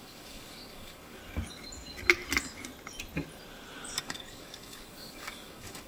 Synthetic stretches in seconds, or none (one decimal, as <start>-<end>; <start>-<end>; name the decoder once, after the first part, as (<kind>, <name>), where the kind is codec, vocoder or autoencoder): 0.0-1.2 (codec, DAC); 4.0-5.9

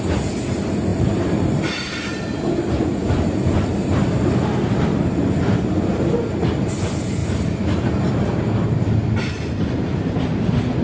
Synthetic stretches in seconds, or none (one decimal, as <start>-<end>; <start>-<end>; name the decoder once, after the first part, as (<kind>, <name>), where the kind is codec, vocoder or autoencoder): 0.9-5.2 (vocoder, BigVGAN v2); 7.2-10.8

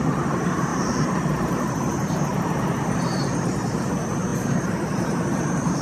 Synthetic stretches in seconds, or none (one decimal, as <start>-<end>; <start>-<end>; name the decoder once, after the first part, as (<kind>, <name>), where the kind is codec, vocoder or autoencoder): 0.0-0.7 (vocoder, BigVGAN v2); 1.5-2.3; 2.8-5.8

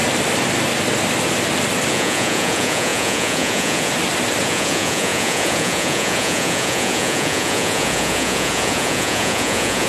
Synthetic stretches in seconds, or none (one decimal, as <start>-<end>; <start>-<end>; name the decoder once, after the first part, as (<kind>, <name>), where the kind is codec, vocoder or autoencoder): 1.9-3.9 (vocoder, Vocos); 4.4-9.9